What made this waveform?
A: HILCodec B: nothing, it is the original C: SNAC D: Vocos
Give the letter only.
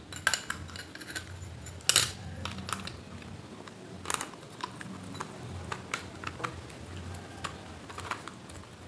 B